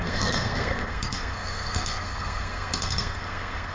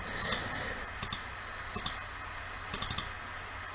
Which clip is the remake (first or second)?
first